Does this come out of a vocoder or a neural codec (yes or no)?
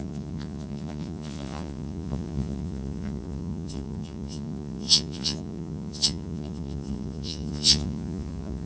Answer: yes